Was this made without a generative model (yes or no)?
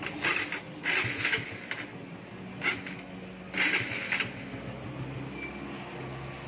yes